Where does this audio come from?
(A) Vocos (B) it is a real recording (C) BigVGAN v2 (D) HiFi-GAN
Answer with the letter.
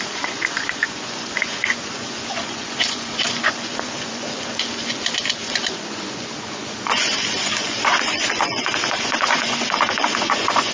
A